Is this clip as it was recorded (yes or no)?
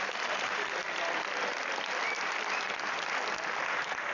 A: yes